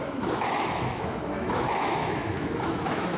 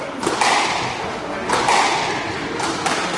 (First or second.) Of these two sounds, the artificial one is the first